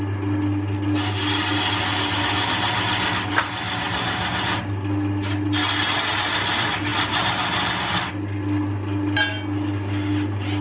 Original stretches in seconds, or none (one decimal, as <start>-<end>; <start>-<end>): 0.0-10.6